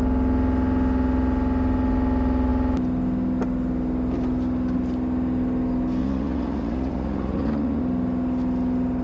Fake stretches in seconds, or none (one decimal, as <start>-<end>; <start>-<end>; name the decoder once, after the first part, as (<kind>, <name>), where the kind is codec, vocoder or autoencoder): 6.0-7.8 (vocoder, Vocos)